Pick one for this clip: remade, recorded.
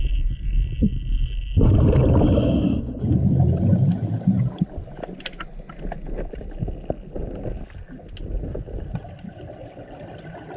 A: recorded